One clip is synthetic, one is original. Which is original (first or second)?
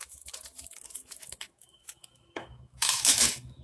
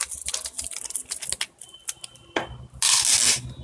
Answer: second